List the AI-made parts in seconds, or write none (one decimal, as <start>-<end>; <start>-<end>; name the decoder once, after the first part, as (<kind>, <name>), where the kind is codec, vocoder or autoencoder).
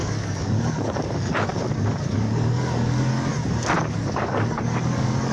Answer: 0.0-1.5 (codec, DAC); 2.1-3.3; 3.8-5.3